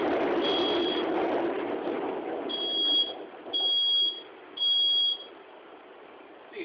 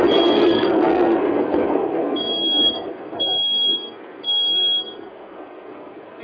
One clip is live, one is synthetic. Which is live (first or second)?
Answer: first